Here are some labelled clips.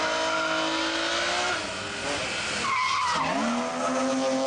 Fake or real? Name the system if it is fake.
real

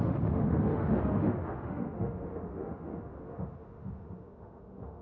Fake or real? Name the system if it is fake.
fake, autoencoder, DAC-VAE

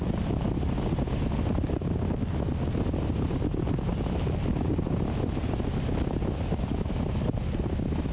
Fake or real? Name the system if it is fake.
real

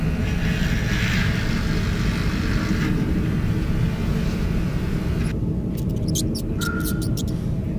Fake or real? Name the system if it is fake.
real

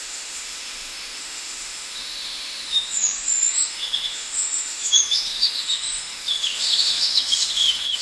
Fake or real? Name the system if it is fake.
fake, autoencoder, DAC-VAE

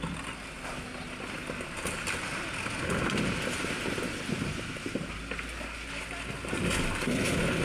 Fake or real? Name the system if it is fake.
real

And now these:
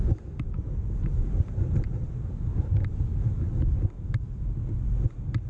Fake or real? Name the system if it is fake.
real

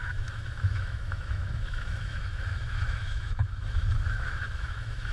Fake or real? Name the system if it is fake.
fake, autoencoder, DAC-VAE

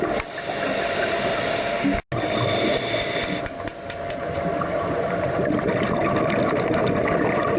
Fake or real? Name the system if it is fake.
real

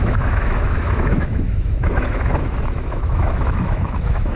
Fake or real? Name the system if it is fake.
fake, autoencoder, DAC-VAE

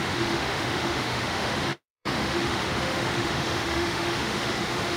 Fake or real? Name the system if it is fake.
fake, autoencoder, DAC-VAE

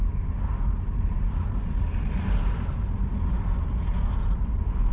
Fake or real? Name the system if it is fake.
real